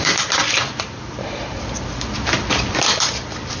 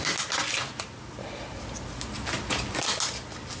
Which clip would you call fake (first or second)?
first